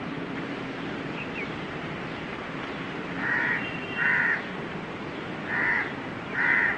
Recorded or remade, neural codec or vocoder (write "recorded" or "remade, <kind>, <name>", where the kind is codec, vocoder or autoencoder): remade, vocoder, BigVGAN v2